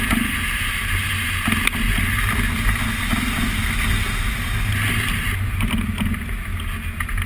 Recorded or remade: recorded